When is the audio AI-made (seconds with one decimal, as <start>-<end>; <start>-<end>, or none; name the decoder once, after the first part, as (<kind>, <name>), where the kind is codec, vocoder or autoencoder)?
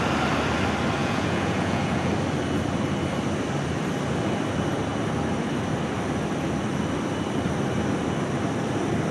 1.0-2.1 (vocoder, Vocos)